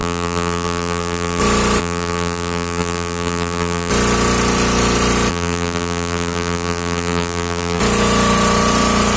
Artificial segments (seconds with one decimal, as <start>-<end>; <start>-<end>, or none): 0.0-1.4; 1.8-3.9; 5.3-7.8